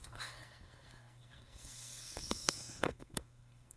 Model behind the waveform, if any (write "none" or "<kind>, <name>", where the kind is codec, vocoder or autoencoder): codec, SNAC